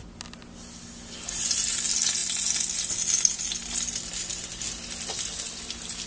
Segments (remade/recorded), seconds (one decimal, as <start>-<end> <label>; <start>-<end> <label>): 0.0-6.1 recorded